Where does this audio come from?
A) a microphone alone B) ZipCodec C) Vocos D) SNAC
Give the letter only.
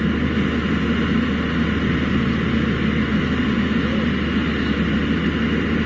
A